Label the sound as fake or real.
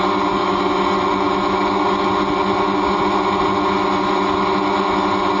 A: real